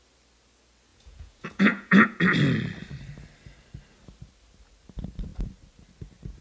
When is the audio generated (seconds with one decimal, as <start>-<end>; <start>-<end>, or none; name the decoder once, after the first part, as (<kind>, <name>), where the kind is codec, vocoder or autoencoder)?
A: 0.9-2.2 (vocoder, Vocos)